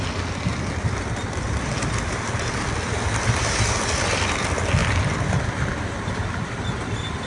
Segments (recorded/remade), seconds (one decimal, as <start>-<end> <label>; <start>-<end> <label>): 0.0-7.3 recorded